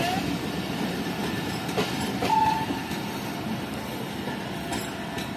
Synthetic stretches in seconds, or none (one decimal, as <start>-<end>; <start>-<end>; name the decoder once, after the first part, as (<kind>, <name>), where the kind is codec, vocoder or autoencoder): none